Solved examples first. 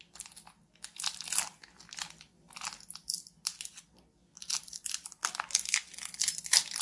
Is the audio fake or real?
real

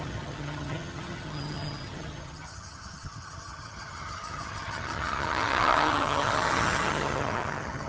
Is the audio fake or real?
fake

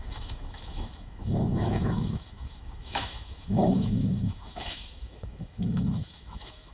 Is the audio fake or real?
fake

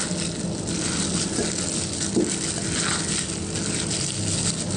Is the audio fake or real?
real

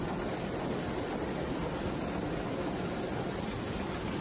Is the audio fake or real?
real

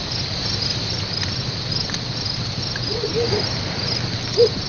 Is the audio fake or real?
real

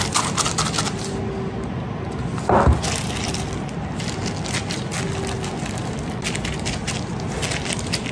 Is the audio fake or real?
real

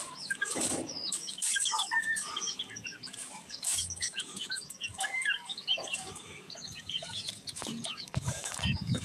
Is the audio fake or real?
fake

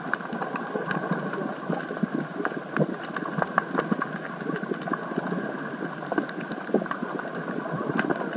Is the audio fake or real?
fake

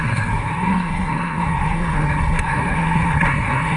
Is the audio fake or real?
fake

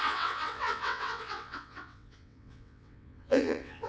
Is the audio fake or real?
fake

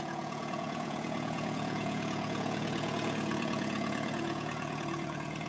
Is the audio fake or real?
fake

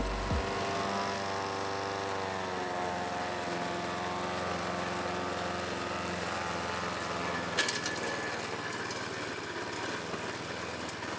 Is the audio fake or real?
real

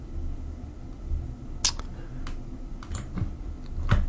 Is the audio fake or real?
real